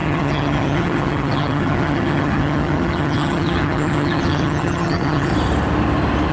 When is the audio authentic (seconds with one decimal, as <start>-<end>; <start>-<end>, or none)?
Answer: 5.3-6.3